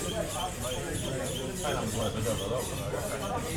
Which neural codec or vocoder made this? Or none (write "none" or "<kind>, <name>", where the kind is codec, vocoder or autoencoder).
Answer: vocoder, BigVGAN v2